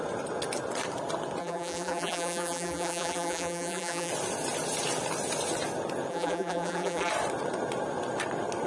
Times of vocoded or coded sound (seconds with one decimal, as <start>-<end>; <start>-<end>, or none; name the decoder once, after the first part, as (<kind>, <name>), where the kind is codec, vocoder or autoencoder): 1.4-4.1 (vocoder, BigVGAN v2); 6.1-7.1